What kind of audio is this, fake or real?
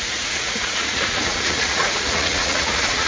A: fake